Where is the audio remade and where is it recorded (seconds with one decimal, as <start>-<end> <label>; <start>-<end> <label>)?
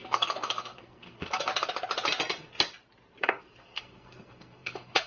0.0-1.5 remade; 1.5-3.2 recorded; 3.2-5.1 remade